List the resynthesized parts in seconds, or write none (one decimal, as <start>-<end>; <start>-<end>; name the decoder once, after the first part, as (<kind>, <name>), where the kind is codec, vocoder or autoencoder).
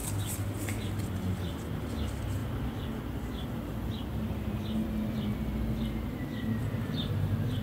none